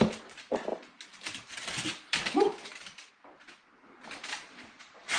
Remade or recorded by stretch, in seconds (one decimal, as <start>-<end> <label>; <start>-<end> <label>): 0.0-4.3 recorded; 4.3-5.2 remade